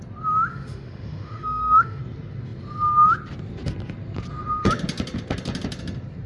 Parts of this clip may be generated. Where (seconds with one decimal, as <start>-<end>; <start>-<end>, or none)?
0.5-2.0